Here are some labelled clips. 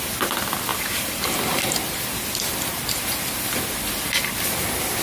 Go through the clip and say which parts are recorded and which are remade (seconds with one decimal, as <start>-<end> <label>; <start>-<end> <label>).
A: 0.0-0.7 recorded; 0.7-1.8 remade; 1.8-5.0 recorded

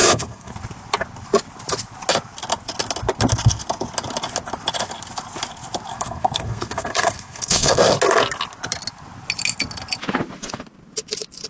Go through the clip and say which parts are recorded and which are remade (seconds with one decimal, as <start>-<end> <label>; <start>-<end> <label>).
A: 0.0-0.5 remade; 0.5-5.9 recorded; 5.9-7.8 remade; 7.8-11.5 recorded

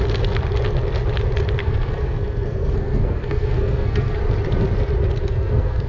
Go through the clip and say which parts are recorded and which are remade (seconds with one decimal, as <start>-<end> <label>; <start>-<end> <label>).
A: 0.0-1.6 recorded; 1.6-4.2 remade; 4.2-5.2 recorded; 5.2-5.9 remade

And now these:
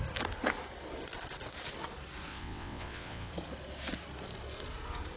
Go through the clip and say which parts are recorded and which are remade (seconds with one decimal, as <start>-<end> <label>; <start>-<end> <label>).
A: 0.0-2.3 recorded; 2.3-3.3 remade; 3.3-5.2 recorded